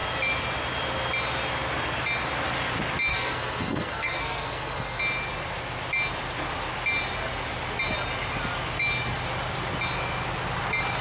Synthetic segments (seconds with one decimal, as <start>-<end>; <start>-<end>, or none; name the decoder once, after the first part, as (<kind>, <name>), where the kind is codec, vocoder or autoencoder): 3.1-5.0 (codec, SNAC)